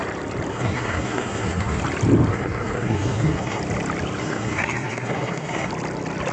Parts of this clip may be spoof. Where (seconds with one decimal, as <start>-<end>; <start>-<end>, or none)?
0.5-1.8; 2.3-3.6; 4.2-5.7